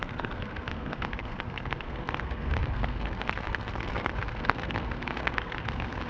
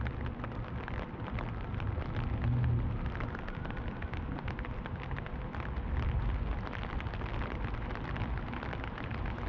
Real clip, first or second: second